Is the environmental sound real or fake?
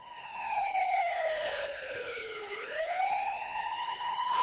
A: fake